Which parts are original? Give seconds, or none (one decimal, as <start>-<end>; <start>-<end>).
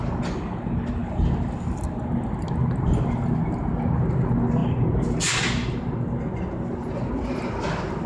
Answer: 0.0-8.1